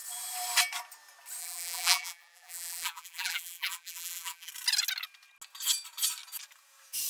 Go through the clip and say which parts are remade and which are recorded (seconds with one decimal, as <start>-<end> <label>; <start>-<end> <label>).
0.0-1.4 recorded; 1.4-4.5 remade; 4.5-7.1 recorded